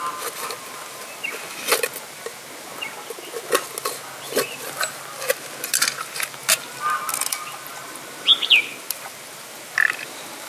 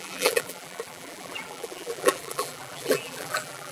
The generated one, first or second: second